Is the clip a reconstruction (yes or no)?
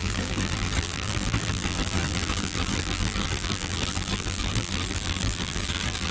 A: yes